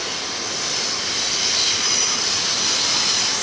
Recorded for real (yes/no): yes